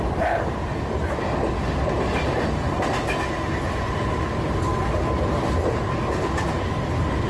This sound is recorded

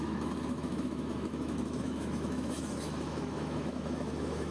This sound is remade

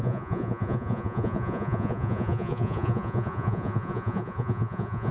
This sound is remade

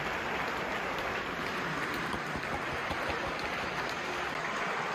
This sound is recorded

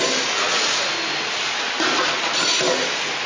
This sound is recorded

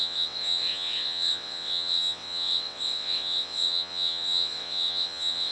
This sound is remade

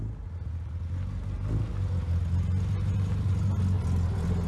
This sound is recorded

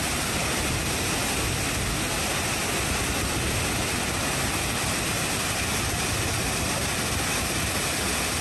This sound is recorded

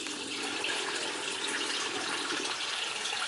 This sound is recorded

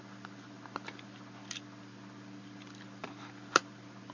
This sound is remade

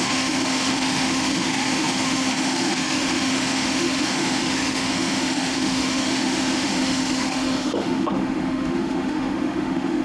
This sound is remade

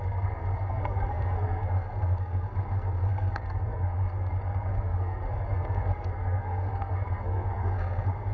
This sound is remade